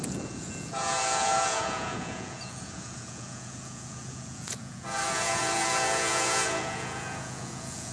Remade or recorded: remade